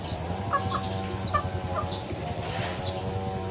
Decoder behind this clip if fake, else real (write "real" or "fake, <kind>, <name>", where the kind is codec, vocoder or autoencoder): real